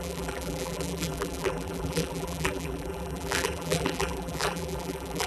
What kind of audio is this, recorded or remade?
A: remade